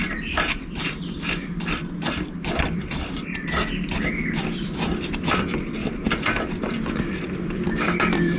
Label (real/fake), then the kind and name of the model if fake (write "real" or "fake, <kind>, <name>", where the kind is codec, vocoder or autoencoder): fake, vocoder, BigVGAN v2